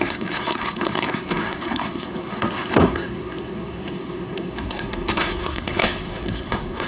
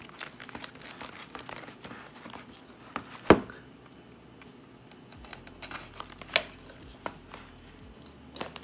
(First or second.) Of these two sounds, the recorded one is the second